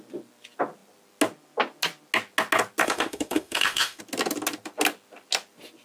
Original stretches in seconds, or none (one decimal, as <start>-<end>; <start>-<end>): 0.0-2.8; 4.0-5.8